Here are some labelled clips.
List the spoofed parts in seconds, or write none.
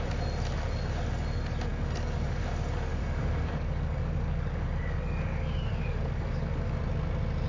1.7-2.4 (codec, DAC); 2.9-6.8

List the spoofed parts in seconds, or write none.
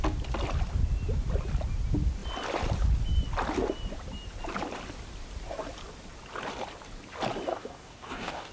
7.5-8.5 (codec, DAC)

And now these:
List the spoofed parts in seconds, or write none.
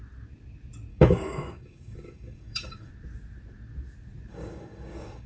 0.9-2.9 (codec, DAC); 4.3-5.3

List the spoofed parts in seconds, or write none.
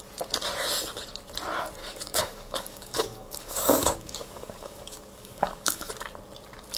1.8-5.9 (codec, DAC)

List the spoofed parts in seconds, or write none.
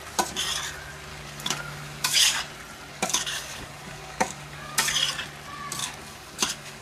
1.1-2.4 (codec, DAC); 2.9-4.8; 5.8-6.8